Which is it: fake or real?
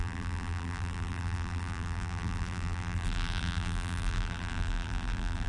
fake